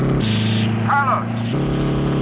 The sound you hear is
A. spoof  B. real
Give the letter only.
B